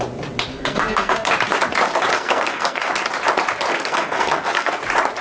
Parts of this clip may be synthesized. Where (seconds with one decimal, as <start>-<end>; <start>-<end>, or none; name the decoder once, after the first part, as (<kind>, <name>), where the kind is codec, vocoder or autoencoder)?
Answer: 0.5-1.3 (codec, SNAC); 2.1-2.9; 3.7-4.8